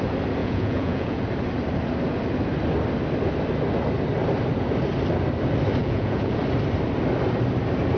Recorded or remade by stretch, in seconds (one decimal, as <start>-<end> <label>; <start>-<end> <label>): 0.0-0.4 recorded; 0.4-1.2 remade; 1.2-5.8 recorded; 5.8-6.4 remade; 6.4-8.0 recorded